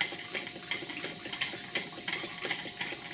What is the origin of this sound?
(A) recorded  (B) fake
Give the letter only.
A